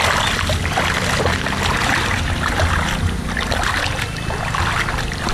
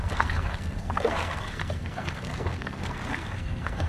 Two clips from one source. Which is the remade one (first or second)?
second